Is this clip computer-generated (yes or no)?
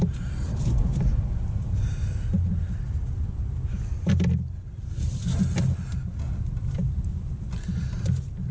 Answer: no